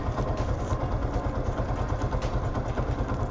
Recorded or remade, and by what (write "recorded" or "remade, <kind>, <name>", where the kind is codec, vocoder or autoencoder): recorded